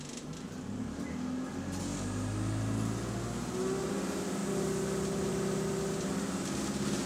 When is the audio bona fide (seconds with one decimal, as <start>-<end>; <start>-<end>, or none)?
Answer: 0.0-7.1